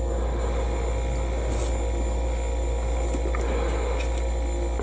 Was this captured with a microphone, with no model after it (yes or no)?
yes